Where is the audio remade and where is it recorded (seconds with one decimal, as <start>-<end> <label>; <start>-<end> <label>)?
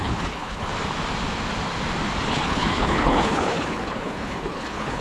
0.0-0.7 remade; 0.7-2.3 recorded; 2.3-5.0 remade